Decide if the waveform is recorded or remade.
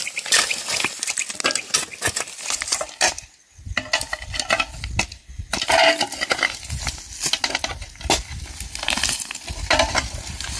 recorded